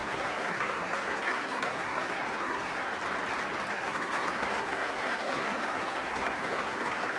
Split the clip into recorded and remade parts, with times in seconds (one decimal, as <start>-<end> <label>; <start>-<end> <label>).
0.0-2.9 remade; 2.9-3.7 recorded; 3.7-7.2 remade